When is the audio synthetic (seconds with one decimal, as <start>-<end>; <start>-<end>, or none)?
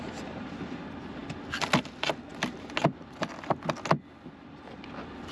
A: none